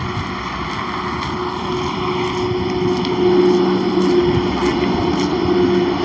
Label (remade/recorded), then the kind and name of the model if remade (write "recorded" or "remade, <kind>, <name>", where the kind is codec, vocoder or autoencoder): recorded